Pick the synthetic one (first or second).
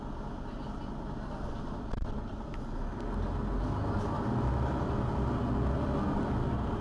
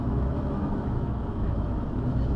second